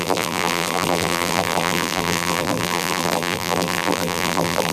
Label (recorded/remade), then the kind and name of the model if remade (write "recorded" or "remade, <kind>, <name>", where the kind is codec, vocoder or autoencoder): remade, vocoder, BigVGAN v2